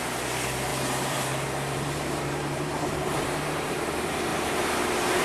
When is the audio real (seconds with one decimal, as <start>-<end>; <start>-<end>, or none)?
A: 0.0-0.7; 3.8-4.3